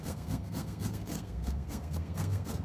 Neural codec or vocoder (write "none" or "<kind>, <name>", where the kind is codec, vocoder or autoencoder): codec, SNAC